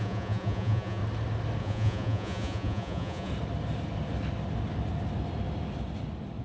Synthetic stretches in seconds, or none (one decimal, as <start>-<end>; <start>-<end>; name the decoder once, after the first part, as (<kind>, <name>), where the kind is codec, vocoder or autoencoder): 0.0-1.0 (vocoder, Vocos); 1.6-3.3